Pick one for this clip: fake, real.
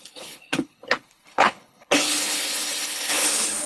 fake